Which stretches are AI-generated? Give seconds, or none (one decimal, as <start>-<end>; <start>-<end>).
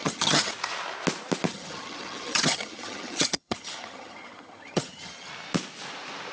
0.0-0.5; 1.5-5.3